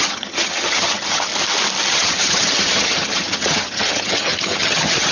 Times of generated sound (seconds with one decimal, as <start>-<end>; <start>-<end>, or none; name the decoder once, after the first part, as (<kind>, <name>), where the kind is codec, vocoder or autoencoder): 0.0-1.3 (vocoder, HiFi-GAN); 1.9-5.1